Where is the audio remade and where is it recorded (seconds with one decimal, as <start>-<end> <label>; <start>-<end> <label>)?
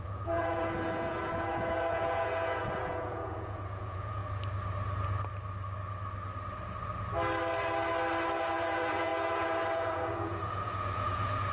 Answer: 0.0-4.2 remade; 4.2-8.4 recorded; 8.4-11.5 remade